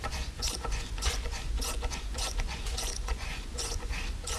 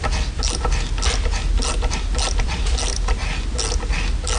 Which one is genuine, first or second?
second